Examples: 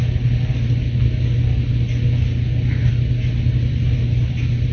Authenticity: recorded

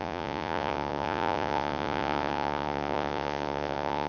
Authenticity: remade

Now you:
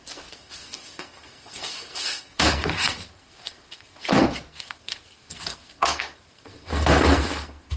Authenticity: remade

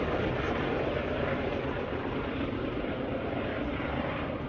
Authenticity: recorded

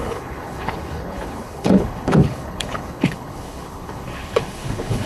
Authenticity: remade